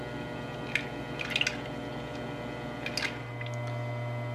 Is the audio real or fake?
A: real